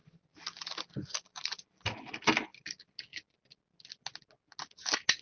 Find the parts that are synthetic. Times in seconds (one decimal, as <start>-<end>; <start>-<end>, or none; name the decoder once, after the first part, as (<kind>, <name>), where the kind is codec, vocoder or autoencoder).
none